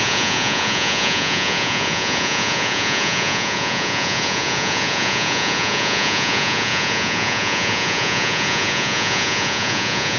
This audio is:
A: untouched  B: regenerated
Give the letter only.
B